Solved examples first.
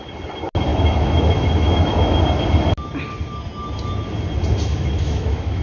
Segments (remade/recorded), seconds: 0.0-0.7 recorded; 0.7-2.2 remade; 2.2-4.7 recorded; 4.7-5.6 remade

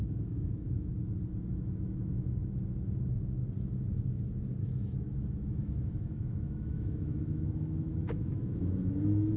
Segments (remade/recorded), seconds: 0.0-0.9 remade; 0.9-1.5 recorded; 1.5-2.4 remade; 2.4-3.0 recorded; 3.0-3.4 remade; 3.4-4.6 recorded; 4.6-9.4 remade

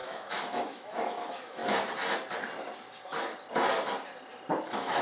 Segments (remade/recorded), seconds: 0.0-1.6 remade; 1.6-4.6 recorded; 4.6-5.0 remade

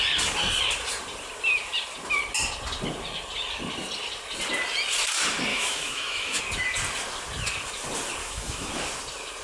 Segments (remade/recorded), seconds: 0.0-5.5 recorded; 5.5-6.4 remade; 6.4-8.2 recorded; 8.2-8.7 remade; 8.7-9.4 recorded

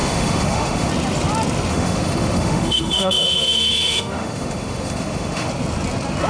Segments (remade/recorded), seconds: 0.0-0.9 remade; 0.9-1.7 recorded; 1.7-5.5 remade; 5.5-6.3 recorded